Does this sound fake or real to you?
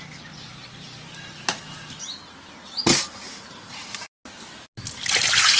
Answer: real